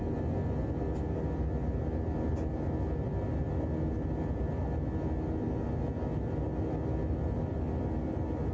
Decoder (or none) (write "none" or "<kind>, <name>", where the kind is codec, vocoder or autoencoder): none